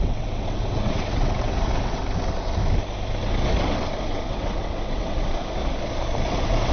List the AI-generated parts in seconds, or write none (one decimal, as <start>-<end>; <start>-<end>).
0.0-2.0; 3.1-5.6; 6.3-6.7